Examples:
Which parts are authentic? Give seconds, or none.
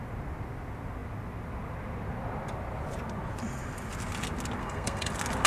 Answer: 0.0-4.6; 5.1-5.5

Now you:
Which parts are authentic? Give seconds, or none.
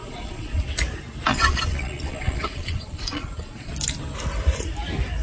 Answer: 0.6-1.3; 3.7-5.2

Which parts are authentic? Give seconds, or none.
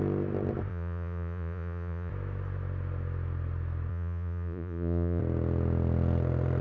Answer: 0.0-0.7; 2.1-3.9; 5.2-6.6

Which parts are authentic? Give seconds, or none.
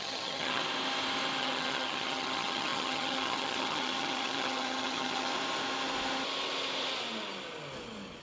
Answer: 0.6-1.4; 5.3-8.2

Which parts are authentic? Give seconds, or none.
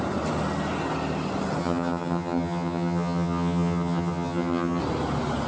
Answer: 0.0-1.6; 4.8-5.5